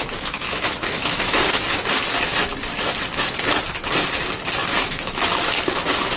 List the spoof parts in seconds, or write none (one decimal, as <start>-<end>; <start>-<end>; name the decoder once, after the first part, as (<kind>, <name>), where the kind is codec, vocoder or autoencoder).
0.0-1.6 (autoencoder, DAC-VAE); 4.6-5.2

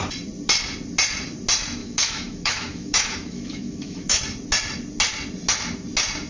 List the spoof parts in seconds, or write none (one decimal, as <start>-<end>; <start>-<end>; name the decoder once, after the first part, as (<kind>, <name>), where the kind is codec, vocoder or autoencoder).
1.8-4.2 (autoencoder, DAC-VAE)

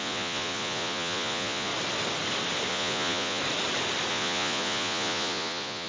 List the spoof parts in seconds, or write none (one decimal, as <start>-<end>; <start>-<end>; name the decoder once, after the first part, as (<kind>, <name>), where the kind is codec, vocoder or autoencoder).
0.0-1.7 (vocoder, Vocos); 2.7-3.4; 4.1-5.9

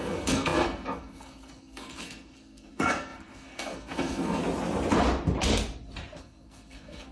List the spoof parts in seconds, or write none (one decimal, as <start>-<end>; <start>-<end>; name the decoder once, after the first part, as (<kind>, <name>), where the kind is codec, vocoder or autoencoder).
0.0-4.4 (codec, SNAC); 6.2-7.1